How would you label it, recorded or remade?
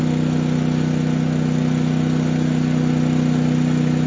recorded